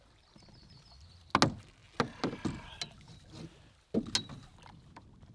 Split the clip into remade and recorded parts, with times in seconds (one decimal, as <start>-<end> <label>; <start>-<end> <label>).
0.0-5.3 recorded